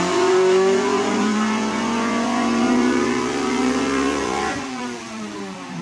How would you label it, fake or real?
fake